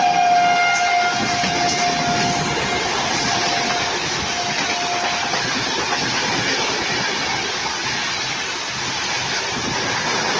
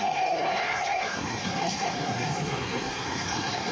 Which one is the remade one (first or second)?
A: second